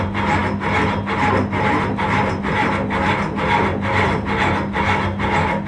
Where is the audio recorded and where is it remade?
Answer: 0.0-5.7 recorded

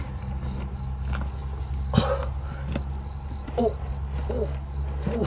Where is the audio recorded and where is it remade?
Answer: 0.0-5.3 recorded